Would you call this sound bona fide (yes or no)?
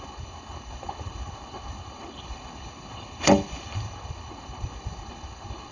no